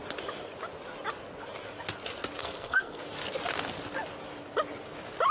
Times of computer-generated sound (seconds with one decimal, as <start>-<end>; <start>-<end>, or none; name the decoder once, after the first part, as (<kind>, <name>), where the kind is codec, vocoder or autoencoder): 2.4-3.0 (codec, SNAC)